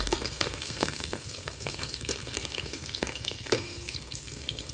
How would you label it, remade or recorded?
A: remade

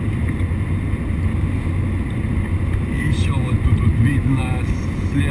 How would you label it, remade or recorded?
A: recorded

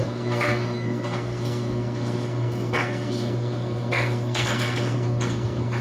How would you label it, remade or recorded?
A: remade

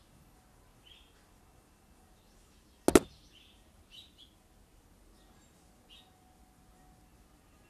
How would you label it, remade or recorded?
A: recorded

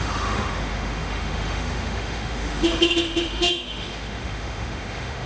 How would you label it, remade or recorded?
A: remade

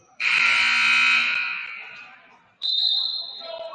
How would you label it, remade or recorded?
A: remade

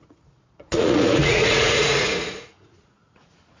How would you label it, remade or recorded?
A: remade